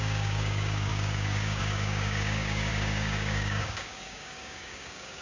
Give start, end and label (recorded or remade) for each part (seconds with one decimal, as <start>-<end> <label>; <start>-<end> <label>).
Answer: 0.0-5.2 remade